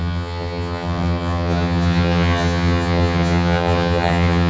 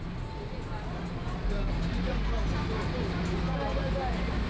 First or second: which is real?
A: second